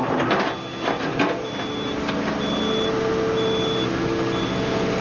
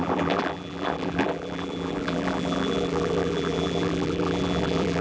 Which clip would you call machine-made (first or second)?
second